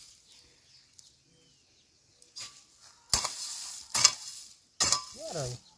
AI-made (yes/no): no